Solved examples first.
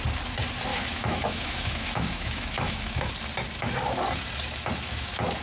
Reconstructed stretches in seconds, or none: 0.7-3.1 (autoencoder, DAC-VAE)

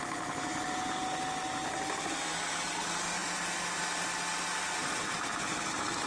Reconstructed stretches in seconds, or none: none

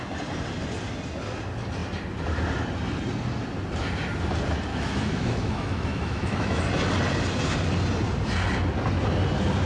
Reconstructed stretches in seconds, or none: 4.7-6.6 (autoencoder, DAC-VAE)

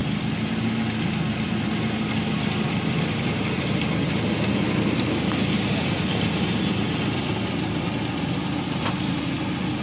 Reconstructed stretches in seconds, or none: none

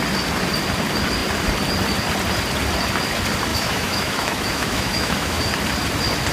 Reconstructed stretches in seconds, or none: 3.5-5.4 (autoencoder, DAC-VAE)

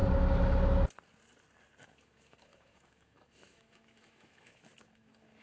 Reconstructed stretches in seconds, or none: 1.8-5.4 (autoencoder, DAC-VAE)

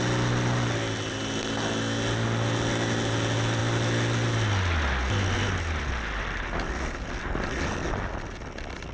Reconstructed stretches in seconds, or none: none

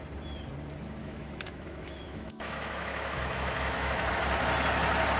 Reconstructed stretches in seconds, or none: 1.0-4.1 (autoencoder, DAC-VAE)